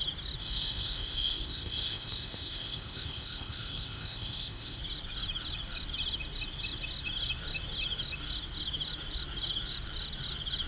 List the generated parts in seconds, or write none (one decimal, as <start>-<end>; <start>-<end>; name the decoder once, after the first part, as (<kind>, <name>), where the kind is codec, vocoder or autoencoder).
0.4-4.8 (codec, ZipCodec)

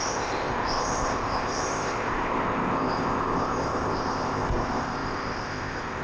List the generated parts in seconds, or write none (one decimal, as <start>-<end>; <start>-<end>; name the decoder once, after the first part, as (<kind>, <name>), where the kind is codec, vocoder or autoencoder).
0.0-6.0 (codec, ZipCodec)

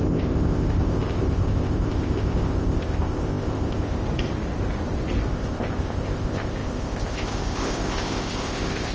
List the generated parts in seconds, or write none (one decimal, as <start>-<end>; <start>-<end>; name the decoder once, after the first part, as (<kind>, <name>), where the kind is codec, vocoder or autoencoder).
0.0-4.0 (codec, ZipCodec); 5.3-8.9